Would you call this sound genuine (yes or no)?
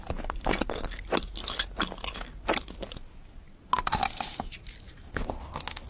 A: yes